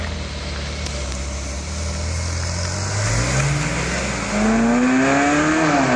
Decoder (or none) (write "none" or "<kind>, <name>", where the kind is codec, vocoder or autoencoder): none